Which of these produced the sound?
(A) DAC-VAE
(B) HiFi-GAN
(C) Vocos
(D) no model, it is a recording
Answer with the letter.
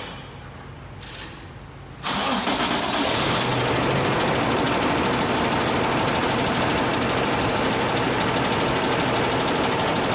D